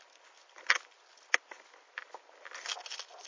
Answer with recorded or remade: recorded